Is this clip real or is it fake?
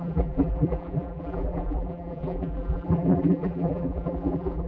fake